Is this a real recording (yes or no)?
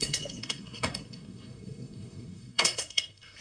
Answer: no